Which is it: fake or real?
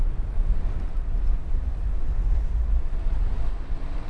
real